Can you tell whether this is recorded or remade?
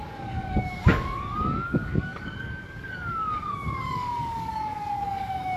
remade